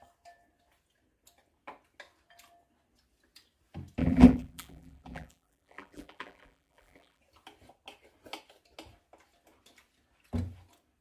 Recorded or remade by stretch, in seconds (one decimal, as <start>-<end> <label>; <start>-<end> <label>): 0.0-4.0 recorded; 4.0-7.2 remade; 7.2-11.0 recorded